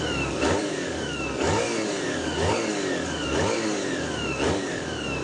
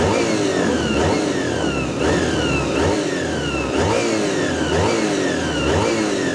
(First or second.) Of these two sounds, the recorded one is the second